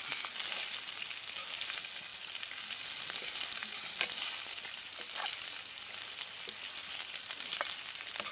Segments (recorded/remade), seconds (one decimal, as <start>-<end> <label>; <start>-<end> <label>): 0.0-8.3 recorded